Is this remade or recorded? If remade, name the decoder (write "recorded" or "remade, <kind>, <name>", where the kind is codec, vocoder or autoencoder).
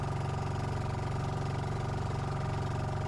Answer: recorded